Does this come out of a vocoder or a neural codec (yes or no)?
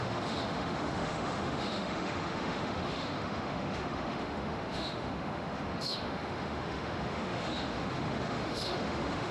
yes